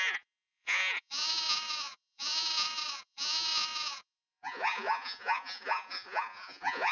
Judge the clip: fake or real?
fake